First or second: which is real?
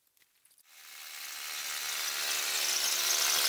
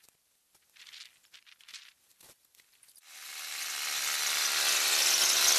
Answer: first